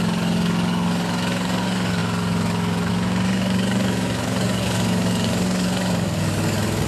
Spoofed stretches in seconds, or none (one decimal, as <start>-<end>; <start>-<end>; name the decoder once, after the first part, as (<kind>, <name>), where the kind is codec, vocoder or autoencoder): 0.0-6.9 (codec, DAC)